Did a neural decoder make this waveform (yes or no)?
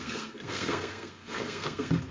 yes